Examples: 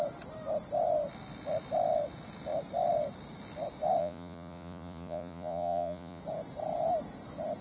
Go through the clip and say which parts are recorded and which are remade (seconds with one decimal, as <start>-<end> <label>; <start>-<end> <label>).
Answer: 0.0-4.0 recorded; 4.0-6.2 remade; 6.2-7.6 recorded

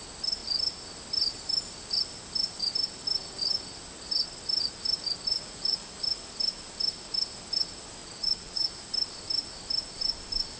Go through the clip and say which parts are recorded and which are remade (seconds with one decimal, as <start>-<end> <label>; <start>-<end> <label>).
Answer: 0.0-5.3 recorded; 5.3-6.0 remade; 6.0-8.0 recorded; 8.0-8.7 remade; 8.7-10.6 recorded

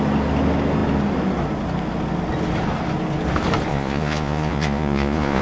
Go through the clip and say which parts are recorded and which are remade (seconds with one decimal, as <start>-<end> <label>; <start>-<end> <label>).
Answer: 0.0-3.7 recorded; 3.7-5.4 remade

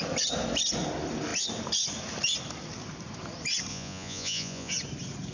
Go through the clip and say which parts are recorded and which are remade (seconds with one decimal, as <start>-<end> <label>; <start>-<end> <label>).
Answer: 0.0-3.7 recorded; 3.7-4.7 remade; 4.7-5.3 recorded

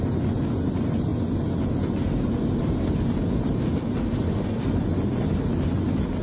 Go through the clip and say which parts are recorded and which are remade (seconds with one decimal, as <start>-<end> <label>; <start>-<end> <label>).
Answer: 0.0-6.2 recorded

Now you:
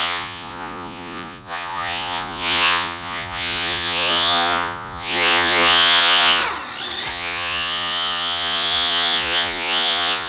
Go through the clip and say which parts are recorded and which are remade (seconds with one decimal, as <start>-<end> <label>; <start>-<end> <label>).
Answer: 0.0-6.4 remade; 6.4-7.1 recorded; 7.1-10.3 remade

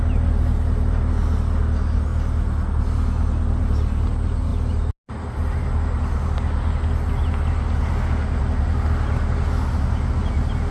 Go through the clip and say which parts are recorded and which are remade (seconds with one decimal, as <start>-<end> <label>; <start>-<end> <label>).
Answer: 0.0-10.7 recorded